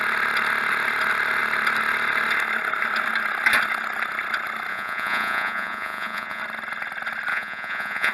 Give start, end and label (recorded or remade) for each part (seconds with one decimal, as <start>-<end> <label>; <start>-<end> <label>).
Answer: 0.0-4.7 recorded; 4.7-6.4 remade; 6.4-7.3 recorded; 7.3-8.1 remade